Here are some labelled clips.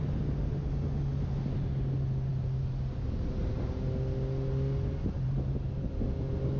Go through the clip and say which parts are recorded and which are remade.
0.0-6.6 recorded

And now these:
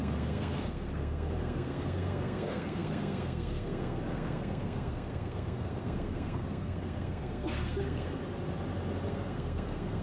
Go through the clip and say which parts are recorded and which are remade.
0.0-8.2 remade; 8.2-9.1 recorded; 9.1-10.0 remade

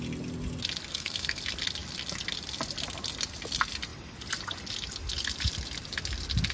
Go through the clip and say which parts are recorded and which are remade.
0.0-0.9 recorded; 0.9-1.4 remade; 1.4-6.5 recorded

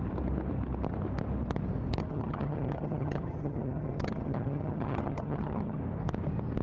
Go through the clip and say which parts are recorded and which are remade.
0.0-2.0 recorded; 2.0-5.8 remade; 5.8-6.6 recorded

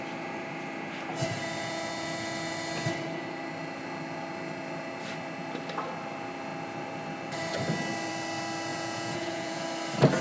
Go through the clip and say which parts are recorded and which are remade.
0.0-8.7 recorded; 8.7-9.6 remade; 9.6-10.2 recorded